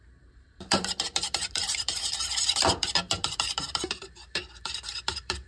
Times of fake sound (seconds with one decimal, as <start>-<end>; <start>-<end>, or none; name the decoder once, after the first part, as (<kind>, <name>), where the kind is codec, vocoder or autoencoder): 0.0-5.5 (vocoder, BigVGAN v2)